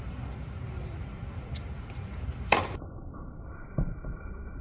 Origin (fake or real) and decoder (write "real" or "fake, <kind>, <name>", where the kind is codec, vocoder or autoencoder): fake, vocoder, BigVGAN v2